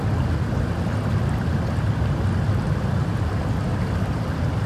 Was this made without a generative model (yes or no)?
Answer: yes